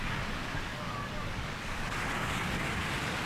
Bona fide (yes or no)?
no